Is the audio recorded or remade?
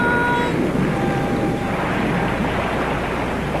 recorded